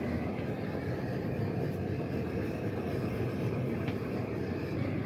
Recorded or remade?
remade